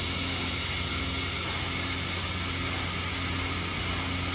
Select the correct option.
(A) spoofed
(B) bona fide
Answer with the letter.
B